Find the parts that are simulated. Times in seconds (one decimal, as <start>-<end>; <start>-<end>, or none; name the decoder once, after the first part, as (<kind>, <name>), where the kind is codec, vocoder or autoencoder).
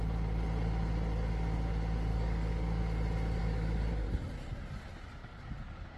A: 2.1-2.8 (codec, DAC); 3.4-4.1; 5.2-6.0